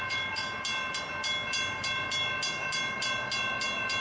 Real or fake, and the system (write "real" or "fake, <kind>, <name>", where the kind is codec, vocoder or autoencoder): real